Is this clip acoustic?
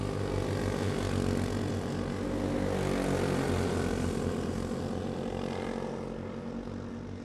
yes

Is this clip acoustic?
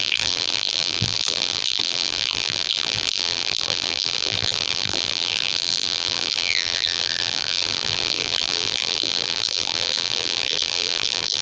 no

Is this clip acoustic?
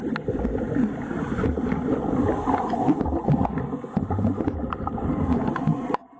yes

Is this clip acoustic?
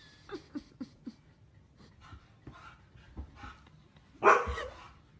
yes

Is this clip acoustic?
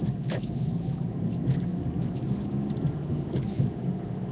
yes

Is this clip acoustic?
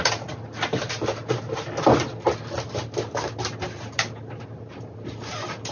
yes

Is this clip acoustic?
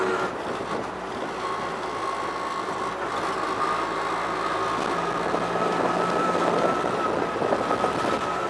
yes